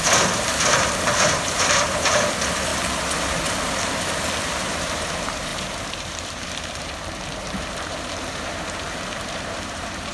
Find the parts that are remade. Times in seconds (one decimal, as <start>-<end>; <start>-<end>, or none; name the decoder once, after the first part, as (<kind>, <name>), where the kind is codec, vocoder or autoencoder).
0.0-2.7 (vocoder, BigVGAN v2); 4.4-10.1